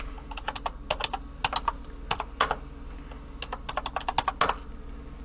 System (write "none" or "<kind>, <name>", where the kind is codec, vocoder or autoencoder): none